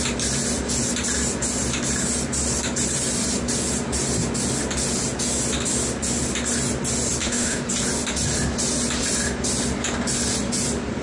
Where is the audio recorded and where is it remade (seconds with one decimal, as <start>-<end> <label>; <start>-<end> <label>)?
0.0-7.2 recorded; 7.2-7.7 remade; 7.7-11.0 recorded